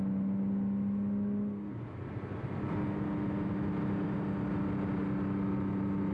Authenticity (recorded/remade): recorded